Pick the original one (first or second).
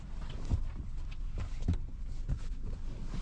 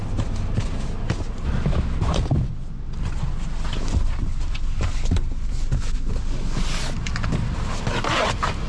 second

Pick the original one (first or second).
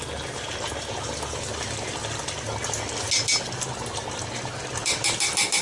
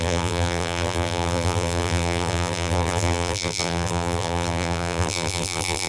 first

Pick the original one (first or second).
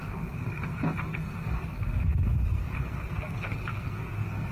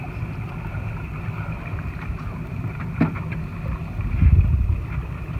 second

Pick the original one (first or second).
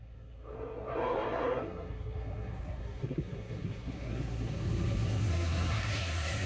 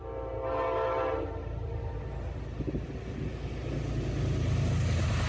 second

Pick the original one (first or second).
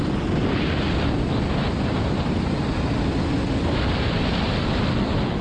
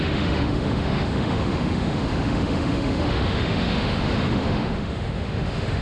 first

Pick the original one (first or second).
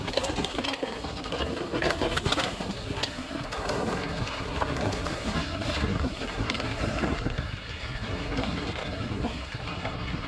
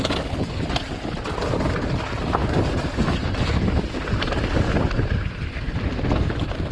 second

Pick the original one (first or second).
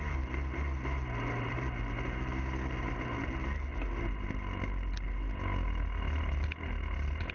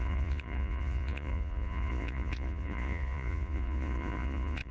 first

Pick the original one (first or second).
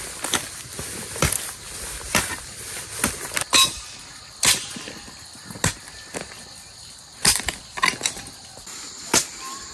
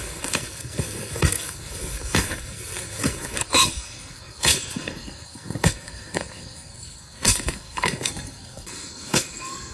first